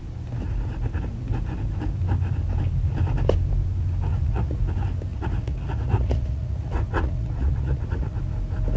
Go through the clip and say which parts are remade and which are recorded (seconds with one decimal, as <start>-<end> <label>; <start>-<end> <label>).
0.0-4.1 recorded; 4.1-4.6 remade; 4.6-5.1 recorded; 5.1-8.2 remade; 8.2-8.8 recorded